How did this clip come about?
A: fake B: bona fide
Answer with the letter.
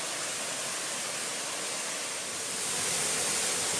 B